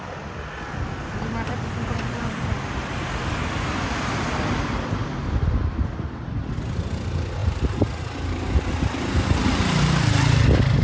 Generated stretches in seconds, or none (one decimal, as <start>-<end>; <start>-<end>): none